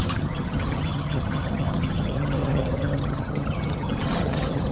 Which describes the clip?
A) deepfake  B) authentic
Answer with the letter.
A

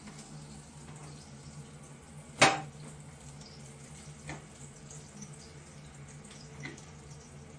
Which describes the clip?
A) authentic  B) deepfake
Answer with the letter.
A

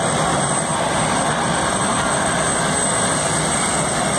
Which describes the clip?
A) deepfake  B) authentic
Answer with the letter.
B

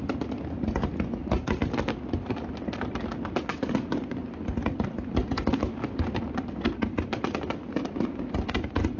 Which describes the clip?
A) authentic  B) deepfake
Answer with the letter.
A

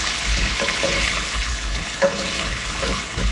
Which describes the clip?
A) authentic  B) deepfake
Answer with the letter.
B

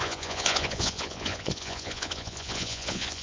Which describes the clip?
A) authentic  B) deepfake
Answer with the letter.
B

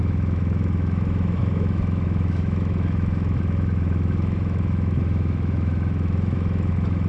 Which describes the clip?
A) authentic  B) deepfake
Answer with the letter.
B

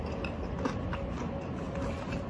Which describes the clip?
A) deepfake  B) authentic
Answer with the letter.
B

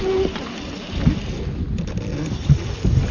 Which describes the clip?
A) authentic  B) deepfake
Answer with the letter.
A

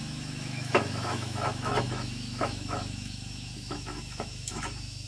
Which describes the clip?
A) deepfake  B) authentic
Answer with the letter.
A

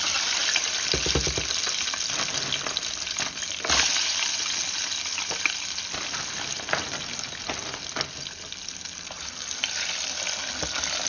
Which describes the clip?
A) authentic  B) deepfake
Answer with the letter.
A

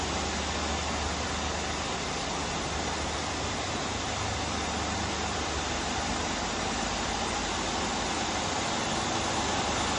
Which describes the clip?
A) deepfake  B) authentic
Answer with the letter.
B